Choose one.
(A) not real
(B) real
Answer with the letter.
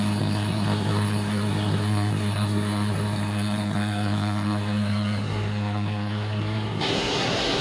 A